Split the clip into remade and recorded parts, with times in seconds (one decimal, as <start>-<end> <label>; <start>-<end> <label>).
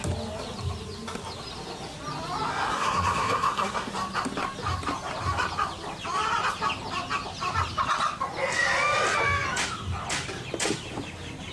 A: 0.0-2.5 recorded; 2.5-3.9 remade; 3.9-11.5 recorded